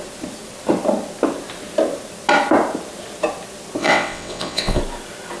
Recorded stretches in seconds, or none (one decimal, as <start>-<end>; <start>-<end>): 0.0-3.8; 4.8-5.4